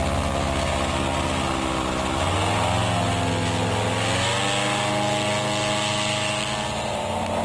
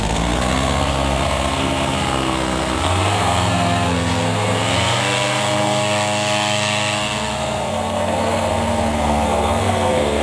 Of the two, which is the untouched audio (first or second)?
first